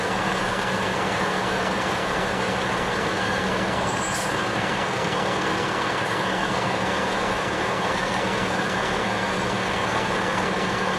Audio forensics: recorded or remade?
remade